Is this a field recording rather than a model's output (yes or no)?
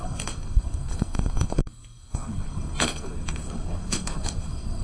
no